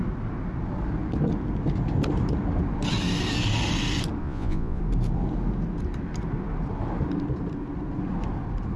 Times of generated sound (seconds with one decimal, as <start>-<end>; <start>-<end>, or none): 4.2-4.8